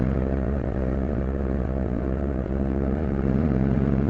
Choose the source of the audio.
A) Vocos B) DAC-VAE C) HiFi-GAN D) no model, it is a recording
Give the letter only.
A